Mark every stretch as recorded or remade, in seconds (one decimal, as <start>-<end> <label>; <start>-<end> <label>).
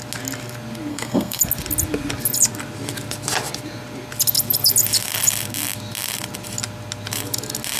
0.0-0.9 recorded; 0.9-1.4 remade; 1.4-7.8 recorded